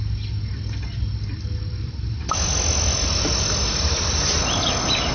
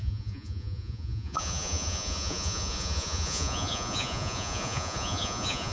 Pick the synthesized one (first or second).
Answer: second